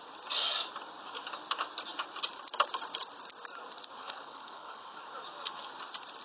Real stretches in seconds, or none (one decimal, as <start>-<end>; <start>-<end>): 0.0-4.0; 5.1-6.2